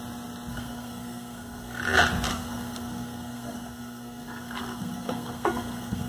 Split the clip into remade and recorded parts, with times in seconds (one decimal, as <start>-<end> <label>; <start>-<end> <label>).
0.0-0.5 recorded; 0.5-1.8 remade; 1.8-2.3 recorded; 2.3-6.1 remade